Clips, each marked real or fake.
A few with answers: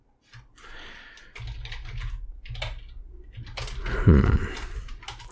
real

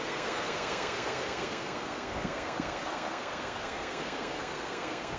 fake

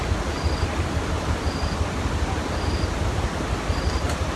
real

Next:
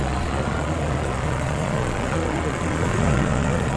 fake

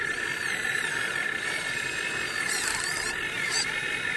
real